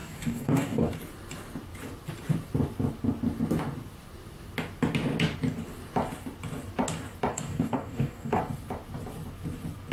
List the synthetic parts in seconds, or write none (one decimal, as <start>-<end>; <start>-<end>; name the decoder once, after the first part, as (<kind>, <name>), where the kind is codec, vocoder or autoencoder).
0.0-0.9 (codec, DAC); 7.3-8.4